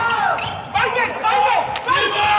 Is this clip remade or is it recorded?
recorded